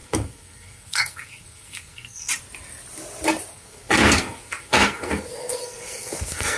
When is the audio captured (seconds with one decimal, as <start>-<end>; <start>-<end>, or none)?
2.3-3.5

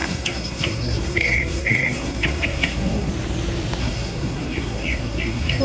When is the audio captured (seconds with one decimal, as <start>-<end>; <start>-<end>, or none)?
3.1-3.8

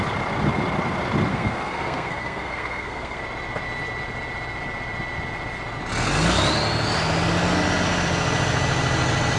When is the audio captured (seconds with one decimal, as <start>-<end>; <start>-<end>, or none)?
0.0-1.3; 3.2-9.4